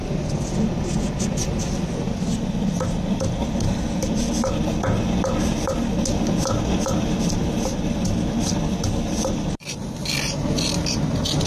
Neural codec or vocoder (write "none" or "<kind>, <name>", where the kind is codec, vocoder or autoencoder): none